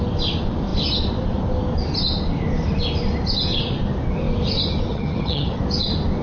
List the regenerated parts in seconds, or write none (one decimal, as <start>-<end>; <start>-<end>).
4.9-5.6